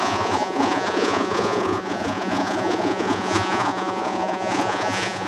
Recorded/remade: remade